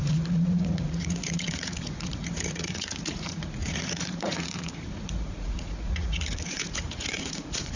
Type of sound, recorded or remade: remade